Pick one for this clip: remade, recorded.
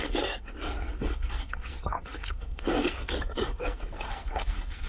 remade